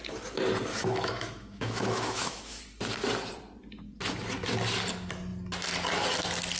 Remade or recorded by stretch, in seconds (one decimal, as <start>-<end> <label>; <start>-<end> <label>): 0.0-0.7 recorded; 0.7-2.6 remade; 2.6-6.6 recorded